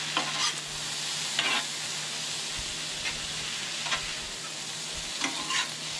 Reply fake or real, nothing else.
real